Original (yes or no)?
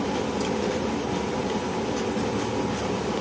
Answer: no